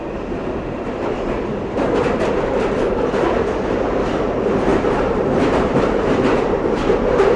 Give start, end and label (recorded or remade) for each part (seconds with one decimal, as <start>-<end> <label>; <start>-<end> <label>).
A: 0.0-4.7 recorded; 4.7-7.4 remade